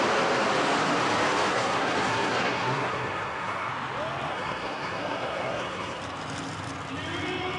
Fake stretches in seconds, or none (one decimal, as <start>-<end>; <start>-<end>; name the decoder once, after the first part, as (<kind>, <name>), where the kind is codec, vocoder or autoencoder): 1.5-3.7 (codec, SNAC); 4.3-6.0